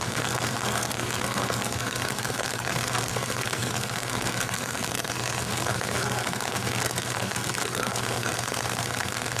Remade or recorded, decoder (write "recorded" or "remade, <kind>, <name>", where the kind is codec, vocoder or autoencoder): remade, codec, SNAC